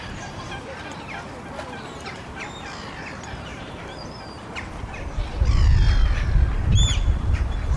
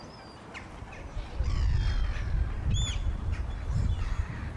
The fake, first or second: first